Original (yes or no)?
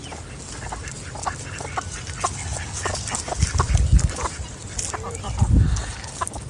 yes